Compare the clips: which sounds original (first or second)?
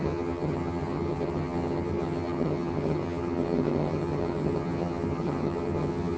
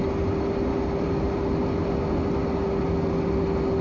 second